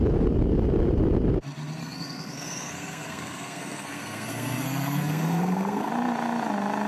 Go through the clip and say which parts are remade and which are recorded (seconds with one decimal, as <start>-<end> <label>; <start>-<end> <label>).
0.0-1.8 recorded; 1.8-5.9 remade; 5.9-6.9 recorded